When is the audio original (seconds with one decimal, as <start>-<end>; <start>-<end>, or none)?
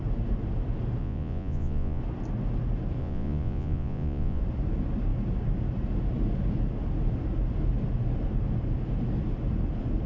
0.0-1.0; 2.0-3.0; 4.4-10.1